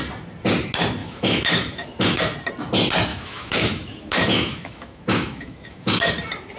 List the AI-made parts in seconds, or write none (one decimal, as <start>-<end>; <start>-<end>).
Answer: 1.0-2.2; 3.1-6.1